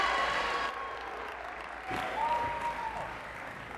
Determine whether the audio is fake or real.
real